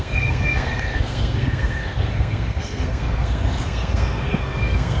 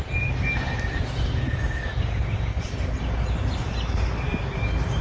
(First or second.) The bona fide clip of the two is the second